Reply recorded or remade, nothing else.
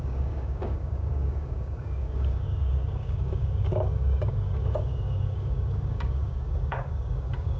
remade